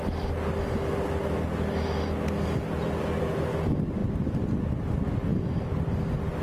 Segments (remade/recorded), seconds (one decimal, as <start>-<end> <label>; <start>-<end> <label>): 0.0-6.4 recorded